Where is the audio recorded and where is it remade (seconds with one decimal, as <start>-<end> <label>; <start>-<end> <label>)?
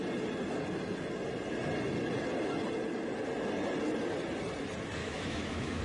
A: 0.0-5.0 recorded; 5.0-5.8 remade